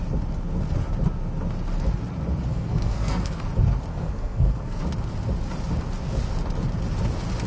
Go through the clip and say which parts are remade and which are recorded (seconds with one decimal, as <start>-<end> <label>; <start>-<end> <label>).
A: 0.0-2.5 recorded; 2.5-3.4 remade; 3.4-3.9 recorded; 3.9-4.8 remade; 4.8-7.5 recorded